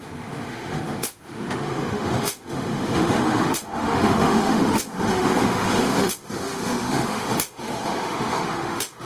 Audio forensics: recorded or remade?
remade